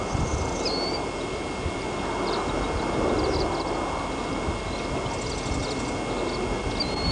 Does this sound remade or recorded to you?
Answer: recorded